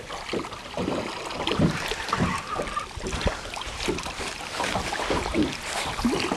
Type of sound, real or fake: real